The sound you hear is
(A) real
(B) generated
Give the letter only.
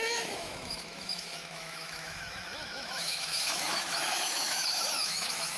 B